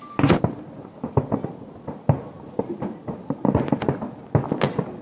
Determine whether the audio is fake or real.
real